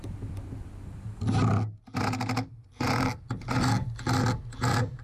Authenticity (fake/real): real